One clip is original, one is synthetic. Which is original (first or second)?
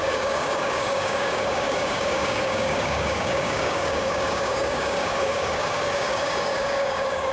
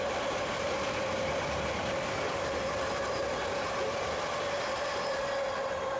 second